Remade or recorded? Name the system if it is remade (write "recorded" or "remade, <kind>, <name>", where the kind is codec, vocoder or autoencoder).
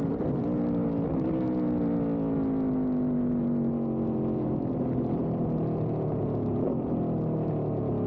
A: recorded